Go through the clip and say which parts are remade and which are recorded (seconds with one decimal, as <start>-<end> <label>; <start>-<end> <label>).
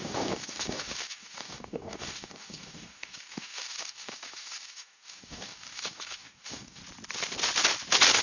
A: 0.0-6.8 remade; 6.8-8.2 recorded